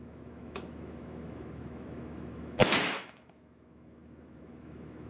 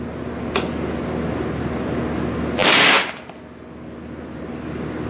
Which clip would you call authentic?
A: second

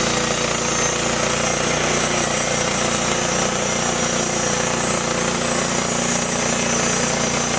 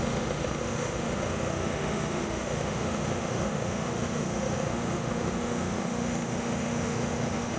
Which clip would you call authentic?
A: first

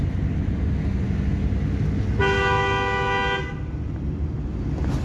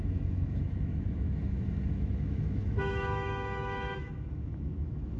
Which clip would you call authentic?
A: first